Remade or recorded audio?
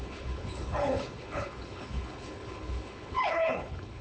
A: remade